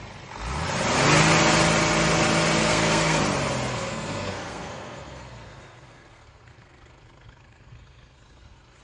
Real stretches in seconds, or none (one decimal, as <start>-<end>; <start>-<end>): 0.0-2.6; 3.2-3.7